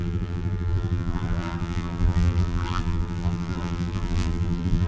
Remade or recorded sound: remade